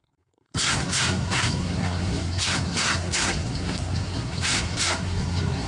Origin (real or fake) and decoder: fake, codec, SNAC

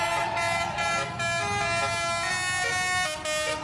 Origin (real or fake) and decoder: real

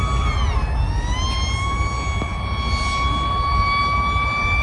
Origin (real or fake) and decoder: real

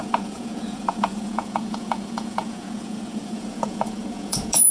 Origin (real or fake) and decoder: fake, vocoder, Vocos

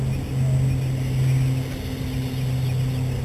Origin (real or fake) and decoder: real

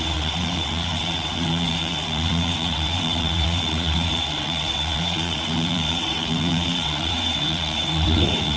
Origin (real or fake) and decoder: fake, vocoder, WaveNeXt